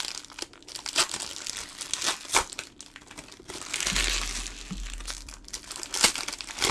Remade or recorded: recorded